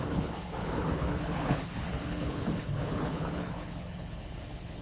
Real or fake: fake